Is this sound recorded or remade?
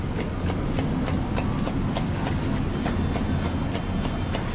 recorded